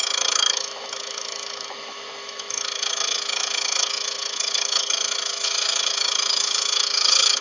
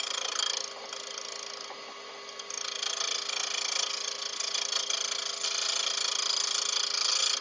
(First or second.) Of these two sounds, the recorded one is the second